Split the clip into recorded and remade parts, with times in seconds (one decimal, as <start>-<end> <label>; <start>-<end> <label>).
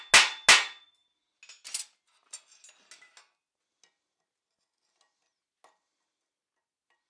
0.0-7.1 recorded